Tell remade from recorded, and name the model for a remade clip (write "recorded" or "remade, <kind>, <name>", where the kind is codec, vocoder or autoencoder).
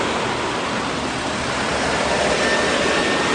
recorded